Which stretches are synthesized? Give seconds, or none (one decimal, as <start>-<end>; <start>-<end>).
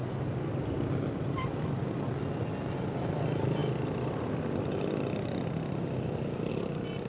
none